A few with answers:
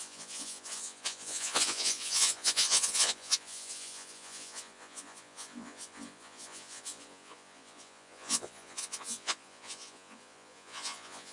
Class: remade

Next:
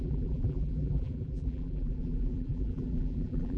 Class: remade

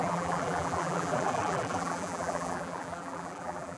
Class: remade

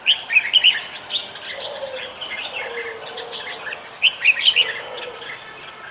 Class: recorded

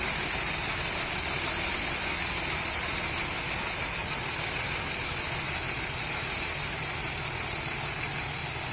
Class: recorded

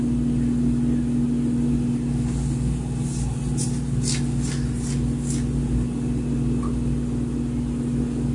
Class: recorded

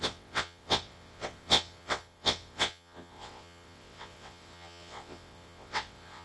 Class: remade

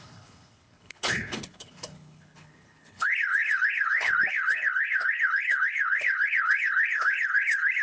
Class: remade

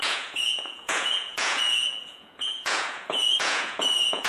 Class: remade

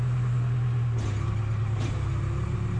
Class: recorded